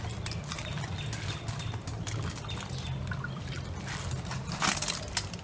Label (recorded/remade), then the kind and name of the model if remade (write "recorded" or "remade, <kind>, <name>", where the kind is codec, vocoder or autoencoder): recorded